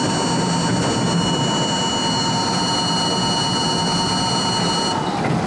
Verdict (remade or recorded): recorded